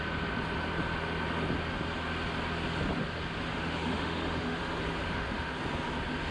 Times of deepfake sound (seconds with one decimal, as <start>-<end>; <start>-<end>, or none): 3.5-4.6; 5.0-5.5